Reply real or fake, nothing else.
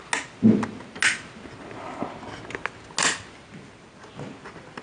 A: real